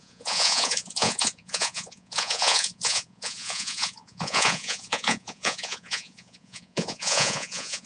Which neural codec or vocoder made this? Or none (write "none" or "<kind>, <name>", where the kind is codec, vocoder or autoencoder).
vocoder, Vocos